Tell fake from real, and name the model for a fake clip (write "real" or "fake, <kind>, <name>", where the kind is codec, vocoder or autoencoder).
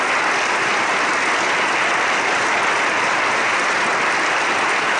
real